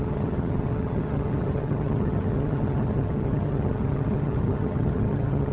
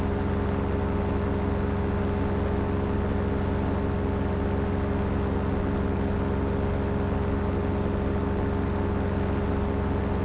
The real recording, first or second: second